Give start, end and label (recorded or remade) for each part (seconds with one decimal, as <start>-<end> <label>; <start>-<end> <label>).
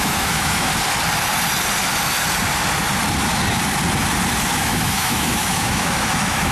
0.0-0.7 remade; 0.7-4.6 recorded; 4.6-6.5 remade